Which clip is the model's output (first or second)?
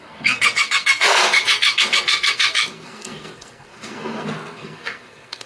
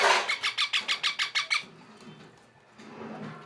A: first